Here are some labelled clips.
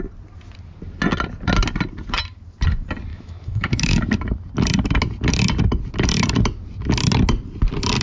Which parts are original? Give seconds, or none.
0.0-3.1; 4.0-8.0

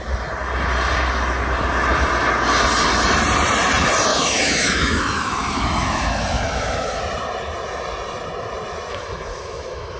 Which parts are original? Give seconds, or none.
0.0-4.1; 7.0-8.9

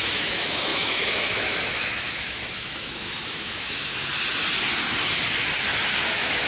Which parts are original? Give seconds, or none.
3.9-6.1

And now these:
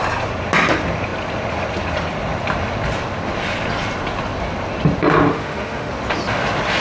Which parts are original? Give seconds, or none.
0.0-5.3; 5.9-6.8